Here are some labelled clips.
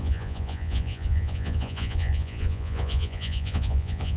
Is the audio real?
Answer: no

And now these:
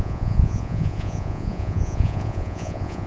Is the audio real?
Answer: no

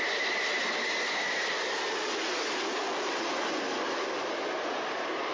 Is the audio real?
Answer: yes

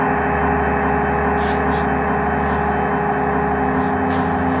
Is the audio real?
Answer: yes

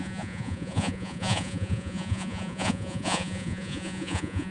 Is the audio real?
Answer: no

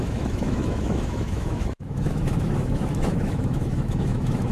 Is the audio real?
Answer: no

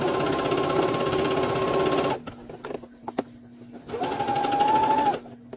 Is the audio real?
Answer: yes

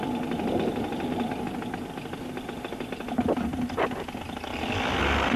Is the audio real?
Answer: yes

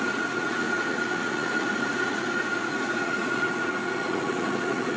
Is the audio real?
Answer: no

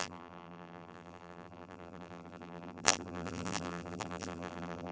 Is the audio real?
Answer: no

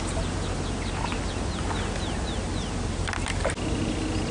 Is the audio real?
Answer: yes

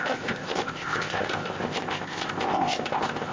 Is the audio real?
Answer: no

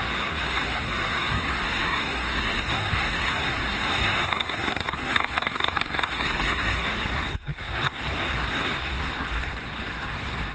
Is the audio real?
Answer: no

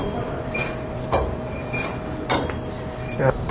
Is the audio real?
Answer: no